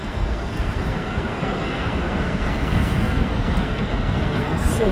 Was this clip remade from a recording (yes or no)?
yes